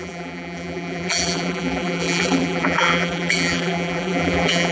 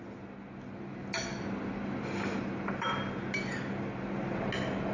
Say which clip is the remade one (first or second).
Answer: first